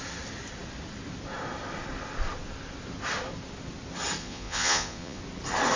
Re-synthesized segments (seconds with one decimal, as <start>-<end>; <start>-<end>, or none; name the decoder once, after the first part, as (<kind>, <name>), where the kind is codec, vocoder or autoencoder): 4.2-5.2 (vocoder, Vocos)